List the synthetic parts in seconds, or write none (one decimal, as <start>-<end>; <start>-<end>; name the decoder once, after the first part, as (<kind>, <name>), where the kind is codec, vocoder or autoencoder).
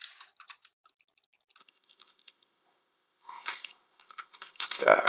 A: 1.6-5.1 (codec, ZipCodec)